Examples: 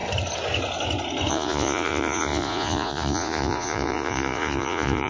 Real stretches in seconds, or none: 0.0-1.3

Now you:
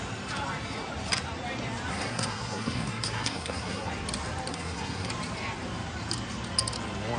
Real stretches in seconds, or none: 0.0-1.9; 3.9-4.5; 5.1-7.2

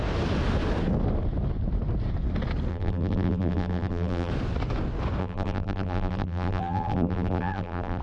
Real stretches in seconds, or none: 0.0-2.7; 4.3-5.2

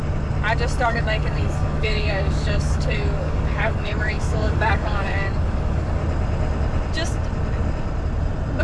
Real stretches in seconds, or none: 0.0-0.9; 6.0-8.6